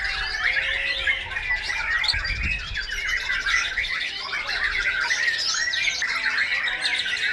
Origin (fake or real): real